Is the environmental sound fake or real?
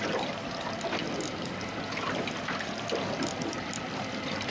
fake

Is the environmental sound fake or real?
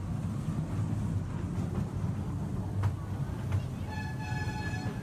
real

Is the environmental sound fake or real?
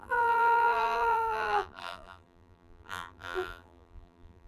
fake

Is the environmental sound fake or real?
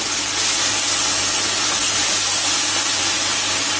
real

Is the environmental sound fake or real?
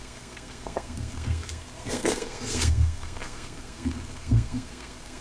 fake